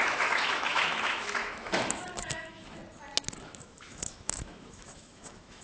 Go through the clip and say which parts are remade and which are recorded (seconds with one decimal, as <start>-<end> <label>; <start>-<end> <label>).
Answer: 0.0-2.8 remade; 2.8-3.4 recorded; 3.4-5.6 remade